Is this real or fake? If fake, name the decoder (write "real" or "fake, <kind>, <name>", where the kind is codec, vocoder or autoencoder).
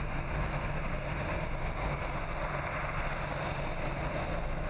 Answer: real